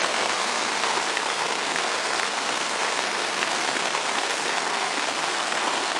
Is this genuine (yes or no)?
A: no